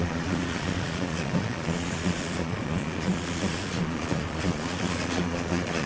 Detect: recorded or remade remade